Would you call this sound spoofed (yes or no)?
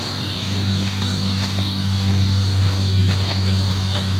yes